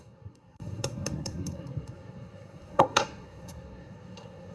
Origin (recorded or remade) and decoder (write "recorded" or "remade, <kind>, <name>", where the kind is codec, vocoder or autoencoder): remade, codec, SNAC